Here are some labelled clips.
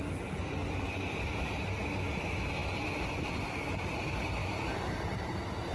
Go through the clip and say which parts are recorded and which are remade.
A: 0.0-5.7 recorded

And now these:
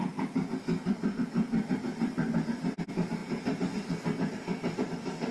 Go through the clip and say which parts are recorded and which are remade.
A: 0.0-5.3 recorded

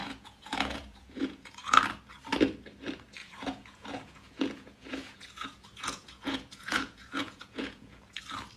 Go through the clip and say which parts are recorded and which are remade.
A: 0.0-1.8 remade; 1.8-3.2 recorded; 3.2-8.2 remade; 8.2-8.6 recorded

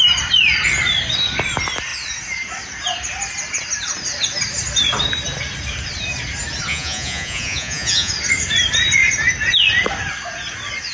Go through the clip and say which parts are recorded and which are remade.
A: 0.0-6.7 recorded; 6.7-8.1 remade; 8.1-10.9 recorded

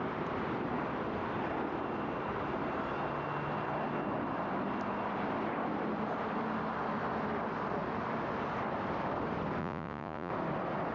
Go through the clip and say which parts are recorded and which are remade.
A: 0.0-9.6 recorded; 9.6-10.3 remade; 10.3-10.9 recorded